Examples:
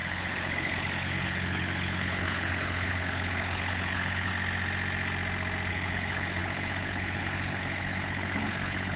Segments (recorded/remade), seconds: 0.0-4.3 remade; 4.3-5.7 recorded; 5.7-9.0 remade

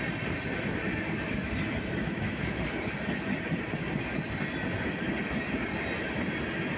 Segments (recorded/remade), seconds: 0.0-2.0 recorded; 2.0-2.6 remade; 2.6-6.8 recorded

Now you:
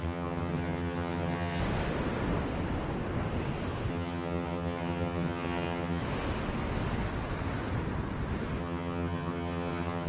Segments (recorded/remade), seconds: 0.0-1.6 remade; 1.6-3.9 recorded; 3.9-6.0 remade; 6.0-8.6 recorded; 8.6-10.1 remade

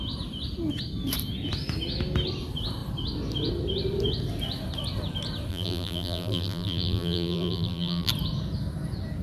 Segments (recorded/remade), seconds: 0.0-5.5 recorded; 5.5-8.1 remade; 8.1-9.2 recorded